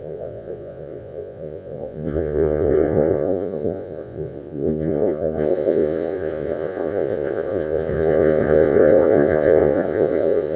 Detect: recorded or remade remade